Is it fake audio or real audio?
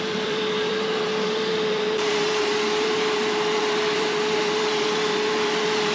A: fake